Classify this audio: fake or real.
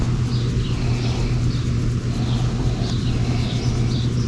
real